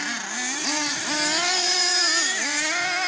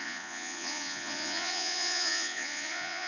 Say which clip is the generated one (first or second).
second